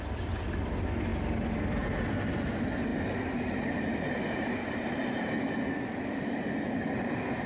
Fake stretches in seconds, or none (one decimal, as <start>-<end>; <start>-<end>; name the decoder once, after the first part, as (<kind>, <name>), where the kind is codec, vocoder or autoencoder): none